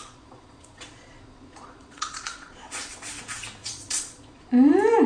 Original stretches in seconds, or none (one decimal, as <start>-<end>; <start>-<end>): 3.1-3.6; 4.5-5.1